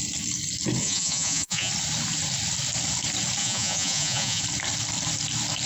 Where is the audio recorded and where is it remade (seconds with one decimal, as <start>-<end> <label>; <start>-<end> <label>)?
0.0-0.8 recorded; 0.8-1.7 remade; 1.7-3.4 recorded; 3.4-4.4 remade; 4.4-5.7 recorded